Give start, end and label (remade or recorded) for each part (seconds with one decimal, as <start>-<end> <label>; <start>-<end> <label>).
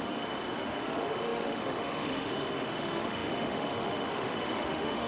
0.0-5.1 remade